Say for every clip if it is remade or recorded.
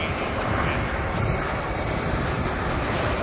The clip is recorded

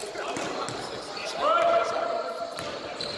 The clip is recorded